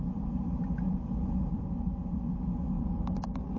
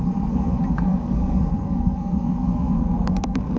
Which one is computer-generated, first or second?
second